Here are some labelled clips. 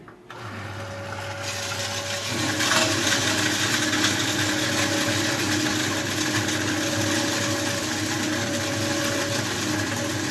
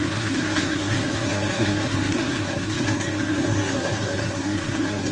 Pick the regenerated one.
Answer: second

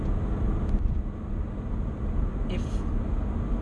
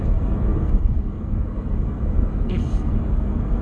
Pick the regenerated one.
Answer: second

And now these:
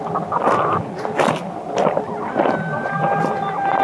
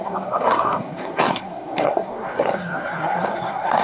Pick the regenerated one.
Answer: second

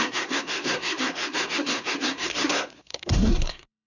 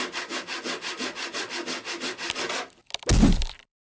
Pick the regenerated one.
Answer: first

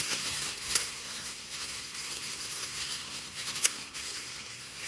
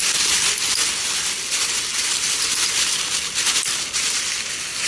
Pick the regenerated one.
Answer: first